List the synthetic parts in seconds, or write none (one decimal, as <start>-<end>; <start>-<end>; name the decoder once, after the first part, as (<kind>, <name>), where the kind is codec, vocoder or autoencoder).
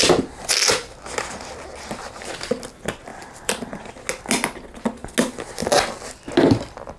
3.1-3.9 (vocoder, BigVGAN v2)